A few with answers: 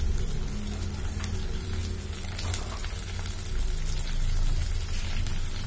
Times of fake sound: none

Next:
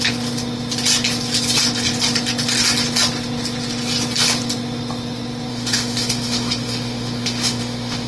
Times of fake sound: 5.5-8.1 (autoencoder, DAC-VAE)

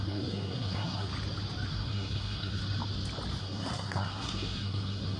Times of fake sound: 0.0-1.1 (codec, SNAC); 1.7-2.6; 3.4-5.2

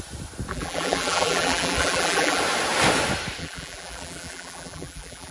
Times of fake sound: 0.5-2.4 (vocoder, BigVGAN v2); 3.4-5.3

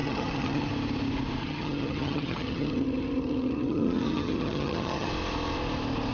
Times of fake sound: 0.0-0.7 (vocoder, HiFi-GAN); 1.4-5.1

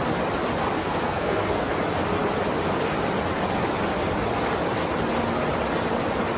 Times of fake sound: 0.8-1.7 (codec, SNAC)